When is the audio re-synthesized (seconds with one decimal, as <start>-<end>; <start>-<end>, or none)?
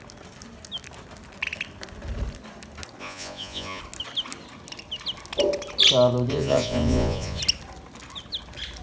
3.0-3.8; 6.3-7.4